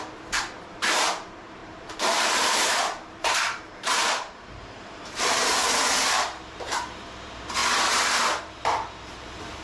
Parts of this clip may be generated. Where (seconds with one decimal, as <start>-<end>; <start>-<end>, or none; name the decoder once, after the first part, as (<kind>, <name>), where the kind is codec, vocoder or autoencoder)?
0.0-7.6 (vocoder, BigVGAN v2); 8.4-9.6